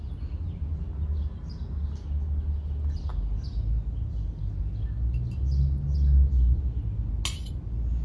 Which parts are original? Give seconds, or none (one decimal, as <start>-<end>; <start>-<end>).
0.0-8.0